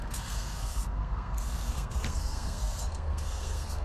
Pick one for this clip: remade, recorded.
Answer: remade